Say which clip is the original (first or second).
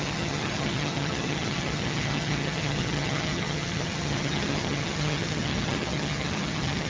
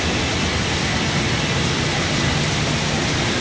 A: second